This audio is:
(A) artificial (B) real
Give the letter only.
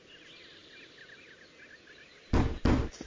B